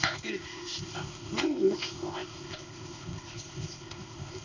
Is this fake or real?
fake